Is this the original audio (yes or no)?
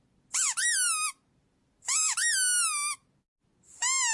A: yes